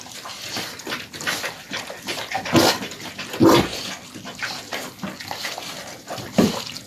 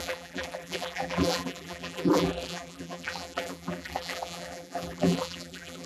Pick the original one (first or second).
first